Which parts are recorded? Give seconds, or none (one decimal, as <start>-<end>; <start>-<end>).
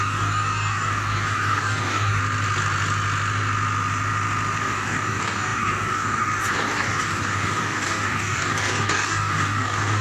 2.2-4.6